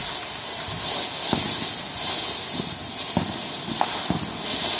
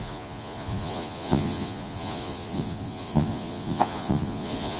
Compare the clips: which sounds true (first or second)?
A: first